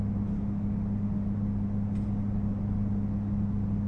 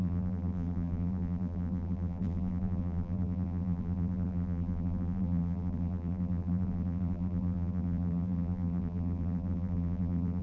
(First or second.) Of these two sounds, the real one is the first